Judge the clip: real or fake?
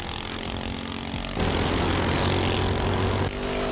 real